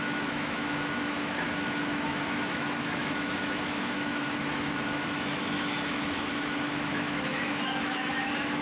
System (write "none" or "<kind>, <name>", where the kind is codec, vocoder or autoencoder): autoencoder, DAC-VAE